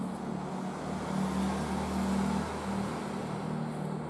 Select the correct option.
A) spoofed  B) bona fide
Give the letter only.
B